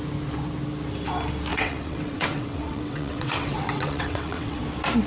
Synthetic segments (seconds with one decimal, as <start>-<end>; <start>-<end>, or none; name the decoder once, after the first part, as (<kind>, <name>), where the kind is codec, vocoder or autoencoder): 1.5-4.6 (vocoder, WaveNeXt)